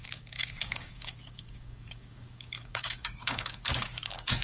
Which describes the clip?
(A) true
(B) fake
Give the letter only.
B